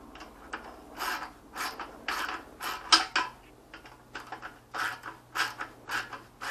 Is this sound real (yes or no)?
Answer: yes